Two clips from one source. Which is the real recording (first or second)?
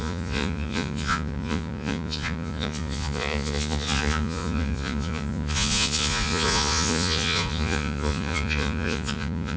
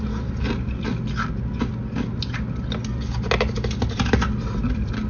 second